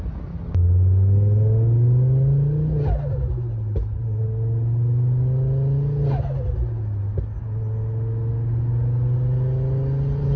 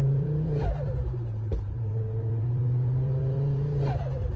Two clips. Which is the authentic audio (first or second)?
first